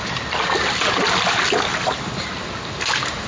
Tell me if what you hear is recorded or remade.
recorded